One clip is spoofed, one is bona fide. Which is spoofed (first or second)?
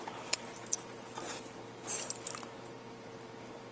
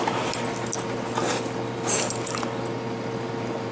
first